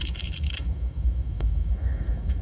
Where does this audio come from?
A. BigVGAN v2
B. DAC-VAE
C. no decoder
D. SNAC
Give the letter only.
B